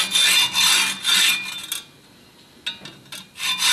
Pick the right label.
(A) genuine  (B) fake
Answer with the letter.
A